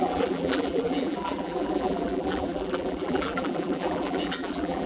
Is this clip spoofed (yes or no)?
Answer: yes